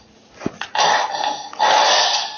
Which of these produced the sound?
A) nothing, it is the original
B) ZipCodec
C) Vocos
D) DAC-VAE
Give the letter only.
A